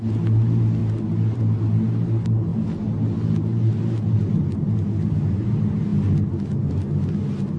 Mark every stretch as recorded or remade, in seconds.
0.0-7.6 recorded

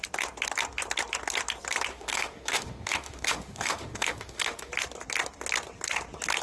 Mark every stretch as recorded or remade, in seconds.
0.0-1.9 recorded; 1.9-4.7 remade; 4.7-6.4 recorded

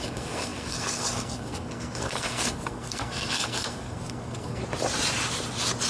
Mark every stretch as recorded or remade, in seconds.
0.0-4.6 remade; 4.6-5.9 recorded